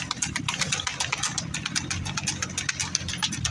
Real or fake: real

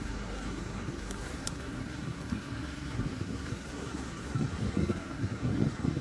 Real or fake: fake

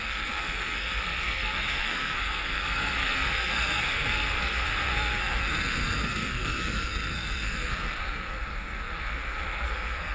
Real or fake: fake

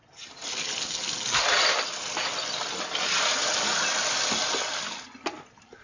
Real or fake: real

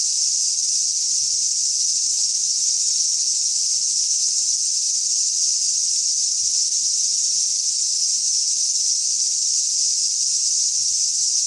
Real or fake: real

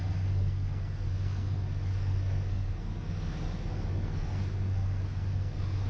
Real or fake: fake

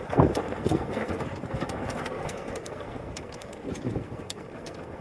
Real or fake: fake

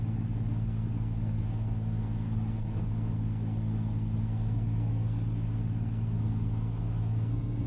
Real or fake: fake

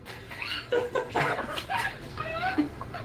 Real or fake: fake